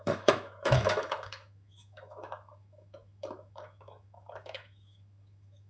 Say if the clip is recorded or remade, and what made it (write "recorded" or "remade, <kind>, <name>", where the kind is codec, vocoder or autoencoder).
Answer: remade, autoencoder, DAC-VAE